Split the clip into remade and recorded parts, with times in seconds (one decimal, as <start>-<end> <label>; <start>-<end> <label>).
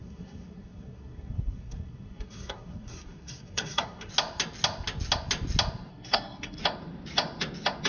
0.0-4.1 remade; 4.1-5.9 recorded; 5.9-6.6 remade; 6.6-7.9 recorded